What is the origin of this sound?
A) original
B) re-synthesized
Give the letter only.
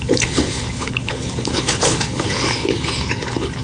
B